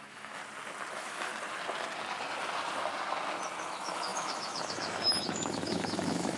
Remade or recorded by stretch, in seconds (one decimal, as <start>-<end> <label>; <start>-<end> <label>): 0.0-0.4 remade; 0.4-0.9 recorded; 0.9-1.3 remade; 1.3-3.6 recorded; 3.6-6.4 remade